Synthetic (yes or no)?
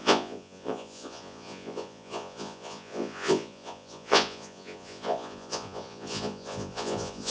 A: yes